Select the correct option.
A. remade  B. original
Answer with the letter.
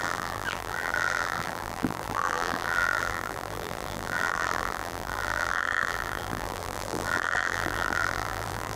A